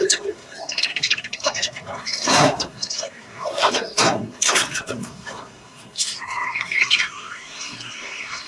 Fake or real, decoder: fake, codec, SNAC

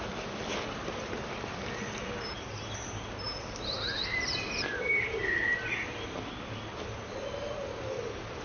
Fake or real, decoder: real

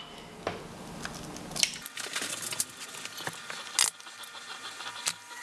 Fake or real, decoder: real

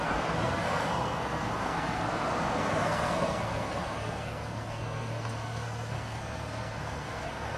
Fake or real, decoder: fake, codec, SNAC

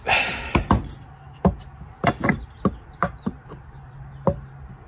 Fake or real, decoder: real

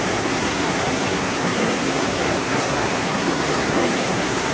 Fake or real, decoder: fake, codec, SNAC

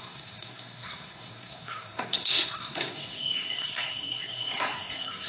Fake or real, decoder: fake, codec, SNAC